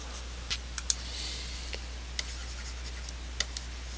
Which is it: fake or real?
real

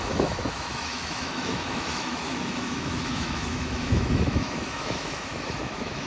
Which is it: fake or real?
fake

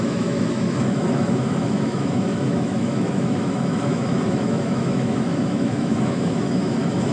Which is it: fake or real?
fake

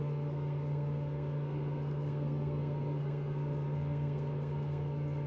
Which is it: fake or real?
fake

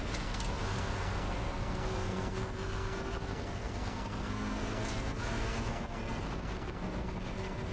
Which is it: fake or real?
fake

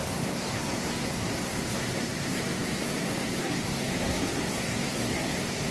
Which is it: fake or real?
fake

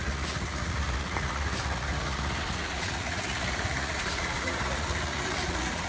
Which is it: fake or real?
fake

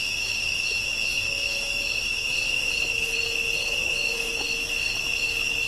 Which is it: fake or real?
fake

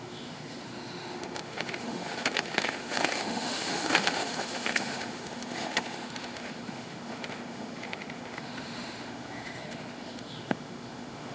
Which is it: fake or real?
fake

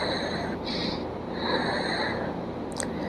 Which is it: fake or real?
real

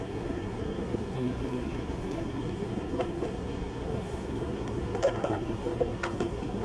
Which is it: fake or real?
fake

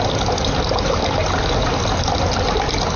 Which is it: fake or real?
real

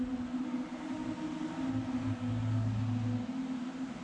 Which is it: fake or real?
real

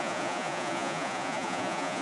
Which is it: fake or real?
fake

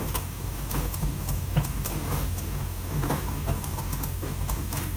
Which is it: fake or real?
fake